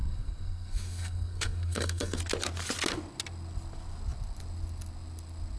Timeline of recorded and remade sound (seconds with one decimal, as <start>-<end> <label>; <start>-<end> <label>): 0.0-2.2 remade; 2.2-5.6 recorded

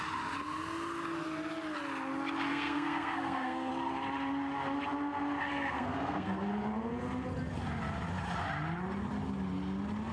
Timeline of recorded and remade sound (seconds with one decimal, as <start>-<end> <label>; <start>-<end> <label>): 0.0-2.5 recorded; 2.5-3.7 remade; 3.7-5.5 recorded; 5.5-6.5 remade; 6.5-10.1 recorded

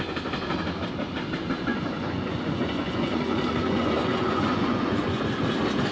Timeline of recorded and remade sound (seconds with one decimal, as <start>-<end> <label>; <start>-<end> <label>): 0.0-1.7 recorded; 1.7-5.2 remade; 5.2-5.9 recorded

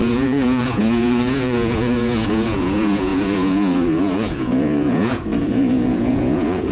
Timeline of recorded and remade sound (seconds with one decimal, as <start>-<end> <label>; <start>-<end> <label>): 0.0-6.7 remade